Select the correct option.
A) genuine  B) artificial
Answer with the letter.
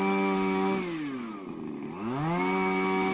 A